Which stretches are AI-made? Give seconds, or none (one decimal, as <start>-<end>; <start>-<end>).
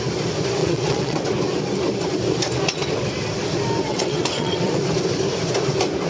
0.6-1.3; 3.9-4.7